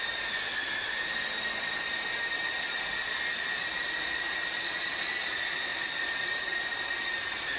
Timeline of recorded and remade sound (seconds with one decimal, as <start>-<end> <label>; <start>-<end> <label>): 0.0-7.6 recorded